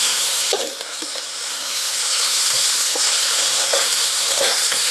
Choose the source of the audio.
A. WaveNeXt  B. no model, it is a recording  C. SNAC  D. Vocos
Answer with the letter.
C